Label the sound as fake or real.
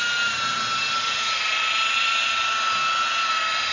real